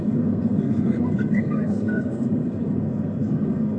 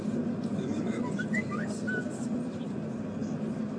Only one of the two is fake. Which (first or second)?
first